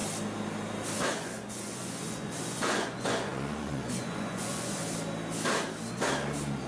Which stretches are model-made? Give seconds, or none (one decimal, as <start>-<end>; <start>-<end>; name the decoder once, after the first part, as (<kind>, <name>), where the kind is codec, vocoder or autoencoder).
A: 1.0-4.8 (vocoder, Vocos)